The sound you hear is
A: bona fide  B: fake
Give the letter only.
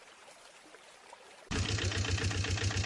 B